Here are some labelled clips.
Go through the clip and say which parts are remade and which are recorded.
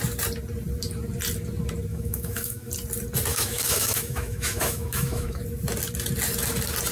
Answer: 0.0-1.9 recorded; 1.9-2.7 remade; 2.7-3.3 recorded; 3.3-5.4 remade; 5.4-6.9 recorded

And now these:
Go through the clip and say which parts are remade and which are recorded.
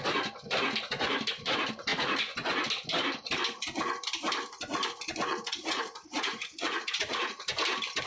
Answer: 0.0-5.3 recorded; 5.3-7.4 remade; 7.4-8.1 recorded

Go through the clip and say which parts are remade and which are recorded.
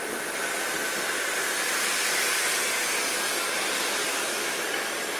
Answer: 0.0-4.1 recorded; 4.1-4.6 remade; 4.6-5.2 recorded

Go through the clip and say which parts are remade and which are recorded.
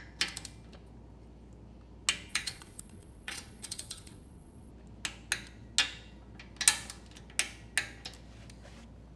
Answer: 0.0-2.3 recorded; 2.3-4.7 remade; 4.7-9.2 recorded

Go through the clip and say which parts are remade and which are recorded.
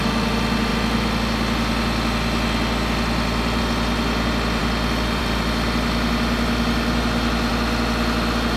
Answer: 0.0-8.6 recorded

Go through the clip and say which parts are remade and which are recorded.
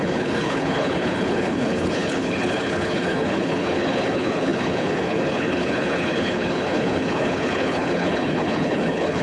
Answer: 0.0-9.2 remade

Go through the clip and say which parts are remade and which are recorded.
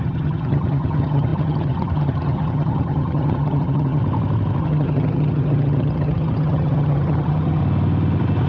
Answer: 0.0-4.0 remade; 4.0-4.6 recorded; 4.6-7.6 remade; 7.6-8.5 recorded